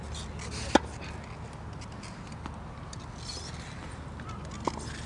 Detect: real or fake real